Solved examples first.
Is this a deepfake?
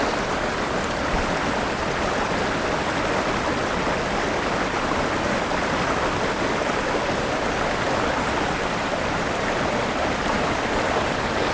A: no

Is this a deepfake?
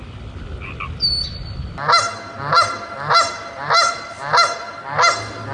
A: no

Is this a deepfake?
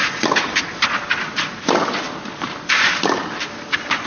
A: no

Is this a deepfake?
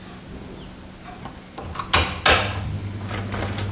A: no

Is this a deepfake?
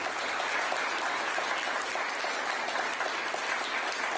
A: no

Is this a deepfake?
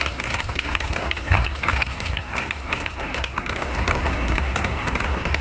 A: yes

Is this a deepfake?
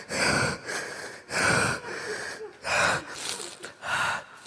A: no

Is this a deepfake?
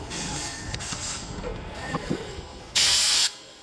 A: yes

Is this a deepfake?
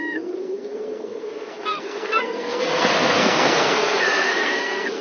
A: yes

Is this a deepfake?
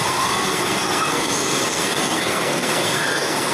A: yes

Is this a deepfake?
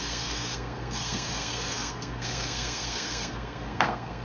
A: yes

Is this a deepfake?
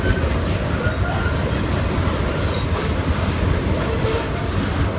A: no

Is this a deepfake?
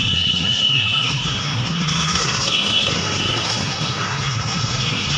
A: yes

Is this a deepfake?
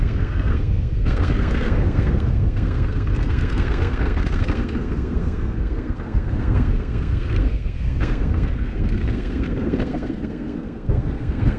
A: yes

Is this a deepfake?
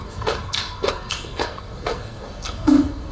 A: yes